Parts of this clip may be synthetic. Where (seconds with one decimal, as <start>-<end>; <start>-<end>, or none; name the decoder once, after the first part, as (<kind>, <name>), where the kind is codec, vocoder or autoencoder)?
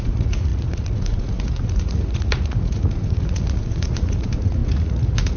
0.0-5.4 (vocoder, Vocos)